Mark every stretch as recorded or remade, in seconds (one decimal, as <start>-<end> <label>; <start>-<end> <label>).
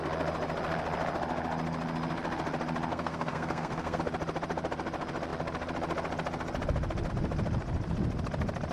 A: 0.0-2.9 recorded; 2.9-4.0 remade; 4.0-8.7 recorded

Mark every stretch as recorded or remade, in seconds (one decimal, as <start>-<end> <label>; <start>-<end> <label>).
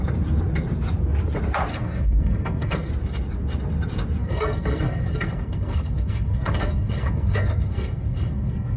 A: 0.0-1.7 recorded; 1.7-2.9 remade; 2.9-4.2 recorded; 4.2-8.8 remade